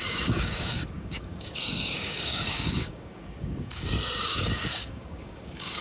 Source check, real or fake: fake